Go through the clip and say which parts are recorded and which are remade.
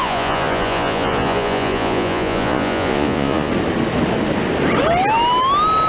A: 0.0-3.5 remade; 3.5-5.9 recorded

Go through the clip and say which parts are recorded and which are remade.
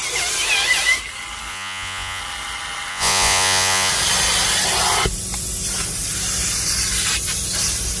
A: 0.0-1.5 recorded; 1.5-2.2 remade; 2.2-2.9 recorded; 2.9-3.9 remade; 3.9-8.0 recorded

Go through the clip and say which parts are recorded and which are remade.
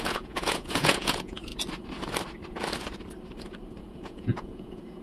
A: 0.0-1.5 remade; 1.5-3.8 recorded; 3.8-5.0 remade